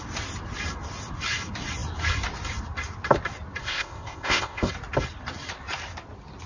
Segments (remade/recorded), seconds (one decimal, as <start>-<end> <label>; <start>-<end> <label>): 0.0-3.6 recorded; 3.6-4.7 remade; 4.7-6.5 recorded